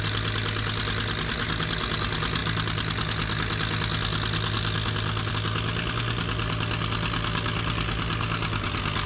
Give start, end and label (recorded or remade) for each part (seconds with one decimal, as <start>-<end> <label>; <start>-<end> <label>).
0.0-9.1 recorded

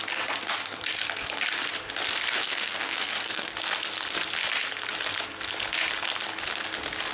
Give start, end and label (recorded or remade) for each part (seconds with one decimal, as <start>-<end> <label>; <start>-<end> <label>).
0.0-2.4 recorded; 2.4-3.5 remade; 3.5-7.1 recorded

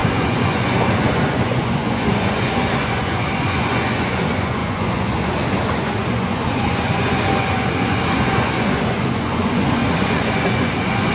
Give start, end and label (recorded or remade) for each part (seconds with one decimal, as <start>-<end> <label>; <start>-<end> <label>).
0.0-11.1 remade

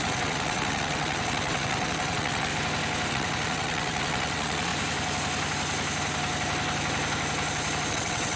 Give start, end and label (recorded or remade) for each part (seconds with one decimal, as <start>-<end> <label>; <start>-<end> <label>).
0.0-2.5 remade; 2.5-3.1 recorded; 3.1-4.7 remade; 4.7-7.9 recorded; 7.9-8.4 remade

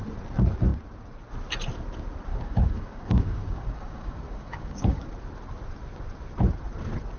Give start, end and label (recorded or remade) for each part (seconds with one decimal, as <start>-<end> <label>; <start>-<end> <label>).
0.0-2.3 recorded; 2.3-5.1 remade; 5.1-7.2 recorded

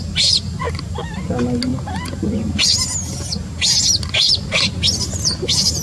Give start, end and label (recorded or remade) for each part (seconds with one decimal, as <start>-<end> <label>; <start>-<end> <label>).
0.0-5.8 recorded

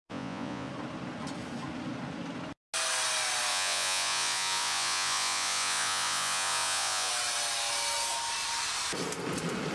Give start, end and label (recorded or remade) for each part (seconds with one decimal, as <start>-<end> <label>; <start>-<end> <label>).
0.0-0.7 remade; 0.7-3.5 recorded; 3.5-7.1 remade; 7.1-9.7 recorded

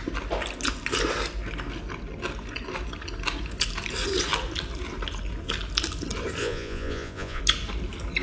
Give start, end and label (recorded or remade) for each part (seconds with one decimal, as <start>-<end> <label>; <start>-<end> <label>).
0.0-6.4 recorded; 6.4-7.4 remade; 7.4-8.2 recorded